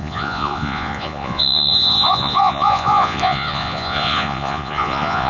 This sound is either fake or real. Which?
fake